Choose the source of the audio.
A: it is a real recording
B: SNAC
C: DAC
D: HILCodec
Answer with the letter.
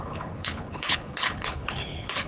D